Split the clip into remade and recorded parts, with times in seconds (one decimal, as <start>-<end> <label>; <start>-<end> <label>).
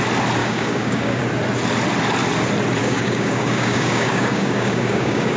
0.0-0.4 recorded; 0.4-1.2 remade; 1.2-2.8 recorded; 2.8-5.4 remade